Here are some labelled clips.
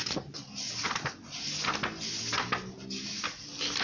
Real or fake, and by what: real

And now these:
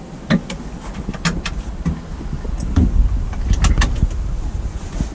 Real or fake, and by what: real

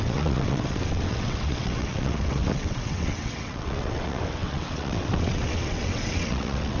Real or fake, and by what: fake, vocoder, WaveNeXt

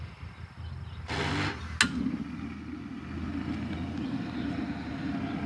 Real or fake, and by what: real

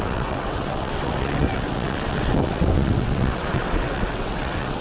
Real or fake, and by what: fake, vocoder, WaveNeXt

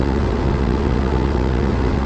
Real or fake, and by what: fake, vocoder, WaveNeXt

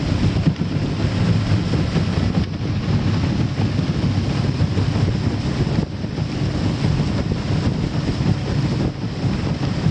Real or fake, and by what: real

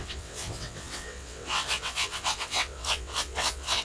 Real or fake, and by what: fake, vocoder, WaveNeXt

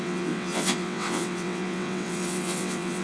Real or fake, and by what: fake, vocoder, WaveNeXt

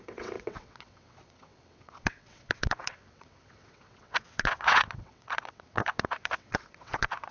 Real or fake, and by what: fake, vocoder, WaveNeXt